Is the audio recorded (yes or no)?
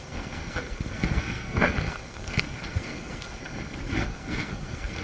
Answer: no